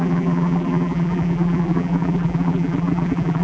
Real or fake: fake